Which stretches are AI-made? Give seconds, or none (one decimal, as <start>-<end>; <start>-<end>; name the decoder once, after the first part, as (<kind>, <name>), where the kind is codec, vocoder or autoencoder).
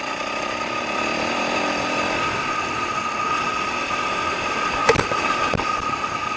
none